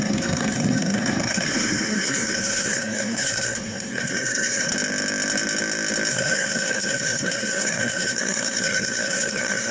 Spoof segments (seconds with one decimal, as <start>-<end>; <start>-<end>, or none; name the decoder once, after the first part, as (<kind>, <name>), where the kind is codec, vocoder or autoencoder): 0.0-4.7 (codec, SNAC); 6.1-9.7